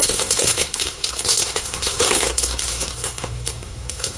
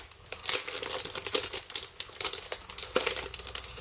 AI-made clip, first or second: first